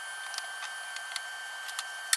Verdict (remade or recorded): recorded